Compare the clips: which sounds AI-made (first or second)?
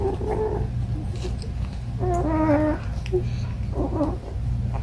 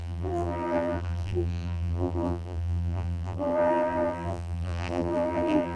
second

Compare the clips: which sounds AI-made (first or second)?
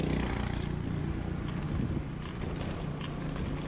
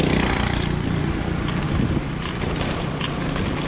second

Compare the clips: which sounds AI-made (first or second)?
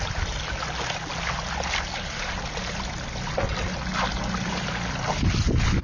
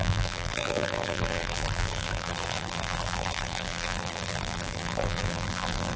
second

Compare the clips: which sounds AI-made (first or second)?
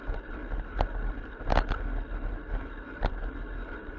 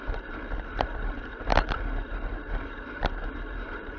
second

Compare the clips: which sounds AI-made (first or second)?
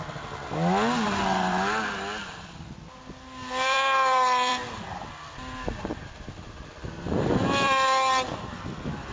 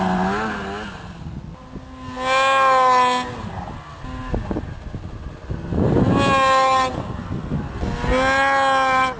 first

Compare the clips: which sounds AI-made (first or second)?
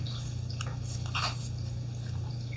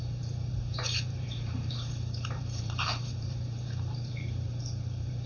second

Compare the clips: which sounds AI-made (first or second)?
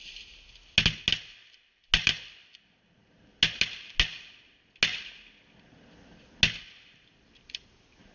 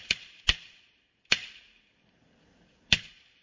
second